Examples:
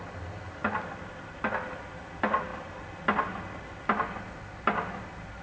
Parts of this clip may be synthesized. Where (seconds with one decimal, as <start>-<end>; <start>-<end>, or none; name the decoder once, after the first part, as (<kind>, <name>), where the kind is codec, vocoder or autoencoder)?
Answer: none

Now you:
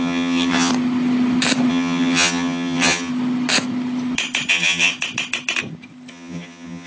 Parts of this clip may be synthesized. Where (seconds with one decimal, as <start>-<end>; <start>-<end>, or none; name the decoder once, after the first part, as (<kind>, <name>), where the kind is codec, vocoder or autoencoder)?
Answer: 0.0-0.7 (vocoder, HiFi-GAN); 1.7-3.1; 4.5-4.9; 6.1-6.9

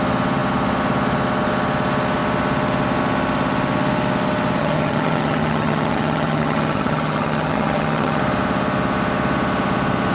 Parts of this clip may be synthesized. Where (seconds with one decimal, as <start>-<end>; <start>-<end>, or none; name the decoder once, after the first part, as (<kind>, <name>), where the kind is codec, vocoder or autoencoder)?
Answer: 4.6-8.2 (vocoder, HiFi-GAN)

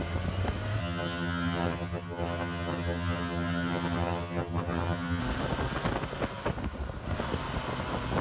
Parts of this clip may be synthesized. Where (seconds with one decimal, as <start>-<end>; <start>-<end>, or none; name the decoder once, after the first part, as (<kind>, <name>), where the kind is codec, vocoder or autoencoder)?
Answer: 0.8-5.2 (vocoder, HiFi-GAN)

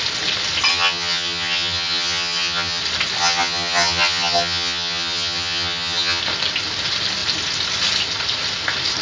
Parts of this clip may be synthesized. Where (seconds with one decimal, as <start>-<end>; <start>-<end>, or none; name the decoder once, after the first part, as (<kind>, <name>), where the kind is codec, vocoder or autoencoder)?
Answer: 0.7-2.8 (vocoder, HiFi-GAN); 3.2-6.2

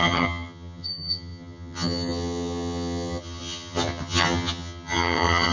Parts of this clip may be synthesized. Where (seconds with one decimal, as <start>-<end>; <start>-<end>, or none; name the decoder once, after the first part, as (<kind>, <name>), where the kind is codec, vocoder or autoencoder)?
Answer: 0.0-5.5 (vocoder, HiFi-GAN)